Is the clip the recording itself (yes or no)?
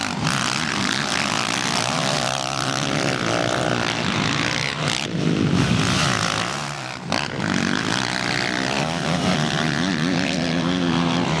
yes